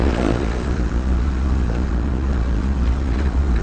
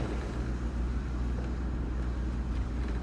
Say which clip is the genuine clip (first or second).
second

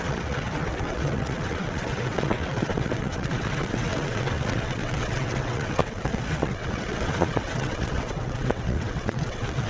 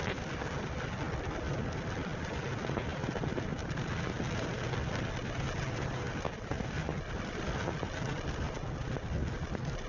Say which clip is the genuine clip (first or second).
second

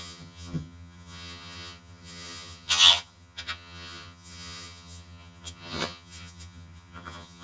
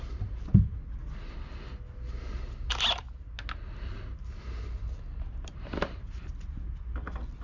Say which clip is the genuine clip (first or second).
second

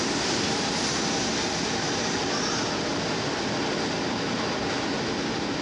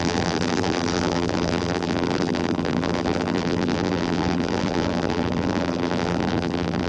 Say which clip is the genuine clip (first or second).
first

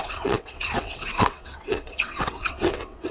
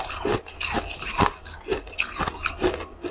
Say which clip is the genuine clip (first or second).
second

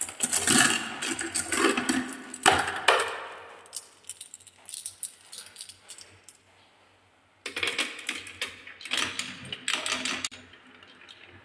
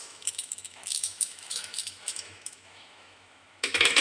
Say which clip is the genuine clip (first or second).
first